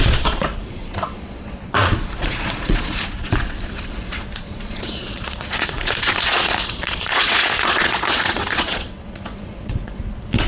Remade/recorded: remade